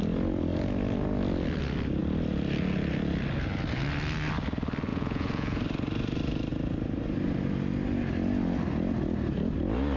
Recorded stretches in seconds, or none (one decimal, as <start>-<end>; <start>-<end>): 0.0-4.9; 5.6-10.0